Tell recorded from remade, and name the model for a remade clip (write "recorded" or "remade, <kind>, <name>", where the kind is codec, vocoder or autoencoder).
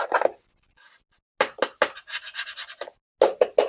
recorded